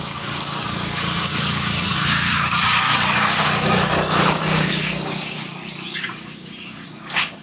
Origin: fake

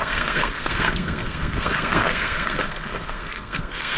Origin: fake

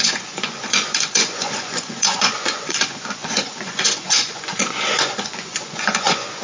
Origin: fake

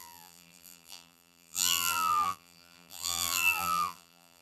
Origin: fake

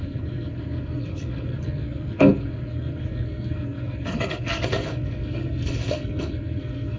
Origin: fake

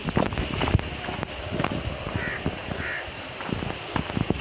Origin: real